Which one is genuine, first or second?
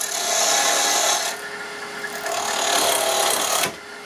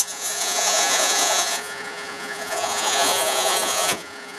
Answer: first